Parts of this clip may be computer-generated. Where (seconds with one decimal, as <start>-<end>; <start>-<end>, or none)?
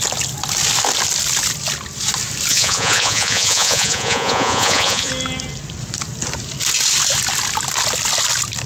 2.5-5.1